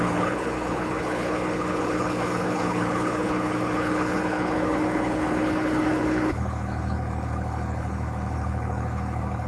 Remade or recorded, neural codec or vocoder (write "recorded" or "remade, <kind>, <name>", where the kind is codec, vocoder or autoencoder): remade, codec, HILCodec